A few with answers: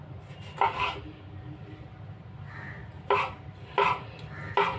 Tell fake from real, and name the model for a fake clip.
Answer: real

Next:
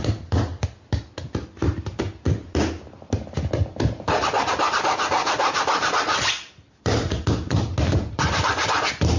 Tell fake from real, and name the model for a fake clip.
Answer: real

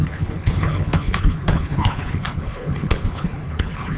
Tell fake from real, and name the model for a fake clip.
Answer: fake, codec, HILCodec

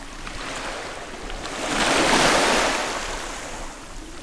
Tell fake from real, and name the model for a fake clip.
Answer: real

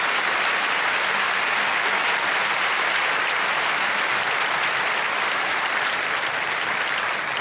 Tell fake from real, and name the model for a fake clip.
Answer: real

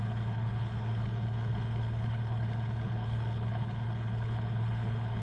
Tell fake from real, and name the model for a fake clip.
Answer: fake, codec, HILCodec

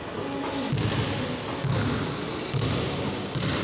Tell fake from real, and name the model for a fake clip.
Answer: real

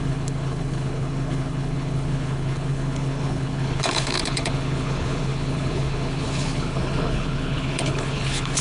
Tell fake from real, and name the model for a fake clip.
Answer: fake, codec, HILCodec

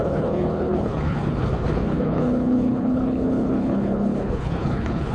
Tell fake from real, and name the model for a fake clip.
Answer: fake, codec, HILCodec